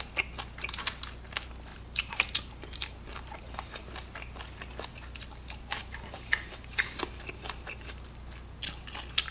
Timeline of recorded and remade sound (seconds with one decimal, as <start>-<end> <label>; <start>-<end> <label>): 0.0-1.7 recorded; 1.7-3.9 remade; 3.9-5.8 recorded; 5.8-7.0 remade; 7.0-9.3 recorded